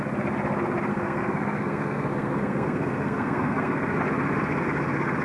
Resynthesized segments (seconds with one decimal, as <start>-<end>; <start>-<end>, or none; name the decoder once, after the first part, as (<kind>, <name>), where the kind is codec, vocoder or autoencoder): 0.9-4.0 (codec, SNAC)